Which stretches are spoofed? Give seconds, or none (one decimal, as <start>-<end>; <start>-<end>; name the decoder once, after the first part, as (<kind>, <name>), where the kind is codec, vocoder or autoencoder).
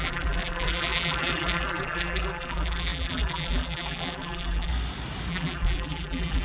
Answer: 0.0-4.7 (vocoder, BigVGAN v2); 5.3-6.4